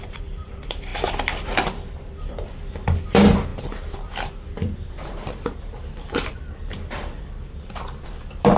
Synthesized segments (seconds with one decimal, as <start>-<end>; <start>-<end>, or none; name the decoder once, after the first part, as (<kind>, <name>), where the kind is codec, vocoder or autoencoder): 0.0-0.9 (vocoder, BigVGAN v2); 2.3-8.6